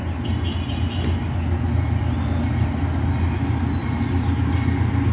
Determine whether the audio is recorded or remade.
recorded